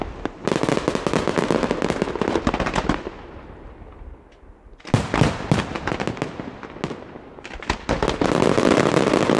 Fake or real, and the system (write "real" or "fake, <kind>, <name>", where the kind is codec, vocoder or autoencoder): real